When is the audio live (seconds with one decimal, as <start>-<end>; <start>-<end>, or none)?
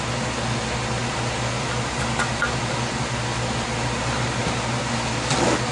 0.0-5.7